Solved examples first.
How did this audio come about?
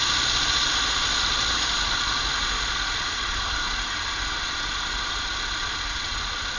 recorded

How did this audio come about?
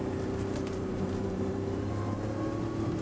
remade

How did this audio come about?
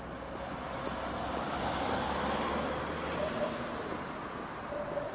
recorded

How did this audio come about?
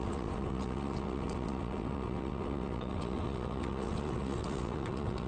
remade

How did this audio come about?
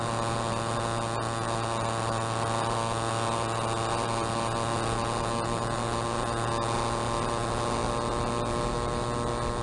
recorded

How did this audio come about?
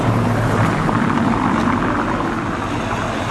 recorded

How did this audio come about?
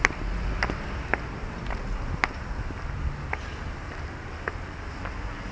recorded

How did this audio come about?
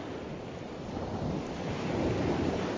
recorded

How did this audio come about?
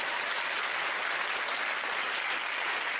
recorded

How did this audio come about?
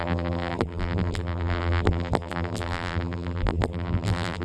remade